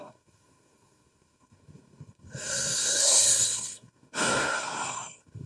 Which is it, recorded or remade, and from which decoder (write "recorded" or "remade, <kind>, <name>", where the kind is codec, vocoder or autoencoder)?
remade, codec, SNAC